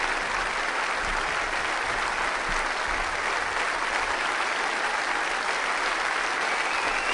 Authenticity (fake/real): real